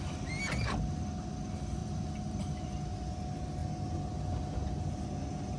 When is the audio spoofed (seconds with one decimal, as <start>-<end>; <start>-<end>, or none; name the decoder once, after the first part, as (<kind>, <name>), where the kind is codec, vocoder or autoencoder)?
1.8-2.4 (vocoder, BigVGAN v2)